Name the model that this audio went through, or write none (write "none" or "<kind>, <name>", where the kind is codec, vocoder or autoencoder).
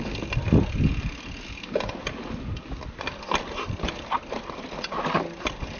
none